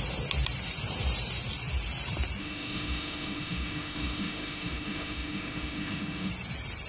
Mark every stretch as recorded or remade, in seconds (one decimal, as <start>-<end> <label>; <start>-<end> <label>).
0.0-2.4 recorded; 2.4-6.3 remade; 6.3-6.9 recorded